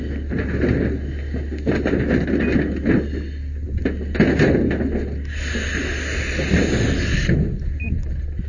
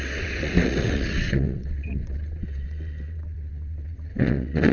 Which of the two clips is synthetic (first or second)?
second